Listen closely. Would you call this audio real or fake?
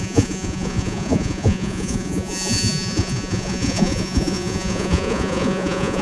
fake